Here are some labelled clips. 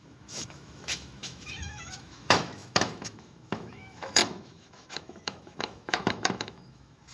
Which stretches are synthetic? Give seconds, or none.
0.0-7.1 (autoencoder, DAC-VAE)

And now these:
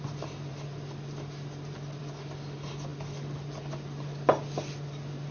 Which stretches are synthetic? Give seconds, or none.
none

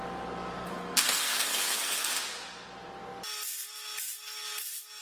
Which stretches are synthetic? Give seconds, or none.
0.6-2.1 (codec, SNAC)

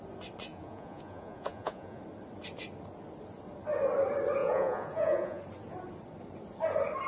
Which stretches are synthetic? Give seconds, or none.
0.5-2.0 (vocoder, Vocos); 4.4-5.4

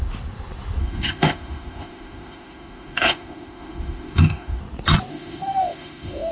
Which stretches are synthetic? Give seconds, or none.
0.8-4.6 (autoencoder, DAC-VAE); 5.1-6.3

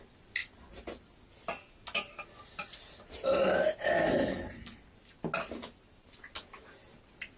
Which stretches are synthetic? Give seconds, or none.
none

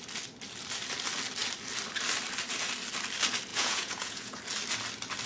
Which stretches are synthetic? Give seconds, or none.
3.5-4.4 (vocoder, Vocos)

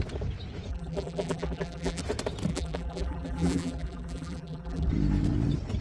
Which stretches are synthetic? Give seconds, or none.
0.7-2.0 (vocoder, BigVGAN v2); 2.5-4.9